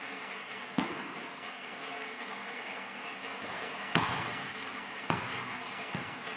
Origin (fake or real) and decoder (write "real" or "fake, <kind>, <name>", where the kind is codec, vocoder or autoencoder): fake, codec, SNAC